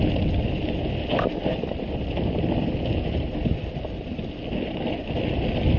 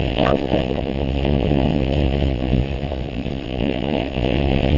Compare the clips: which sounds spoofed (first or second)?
second